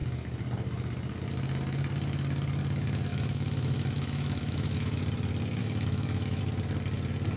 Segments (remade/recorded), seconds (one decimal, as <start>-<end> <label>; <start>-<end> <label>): 0.0-3.1 recorded; 3.1-5.0 remade; 5.0-5.6 recorded; 5.6-6.4 remade; 6.4-7.4 recorded